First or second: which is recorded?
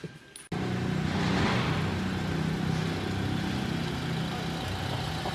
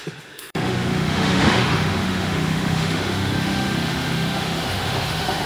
first